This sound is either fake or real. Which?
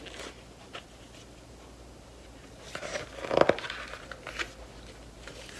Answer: real